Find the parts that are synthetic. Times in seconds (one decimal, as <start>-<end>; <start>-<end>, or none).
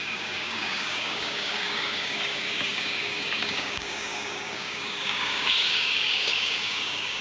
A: 0.0-7.2